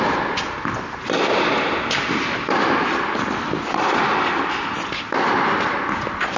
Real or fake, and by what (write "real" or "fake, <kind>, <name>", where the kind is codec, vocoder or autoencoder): real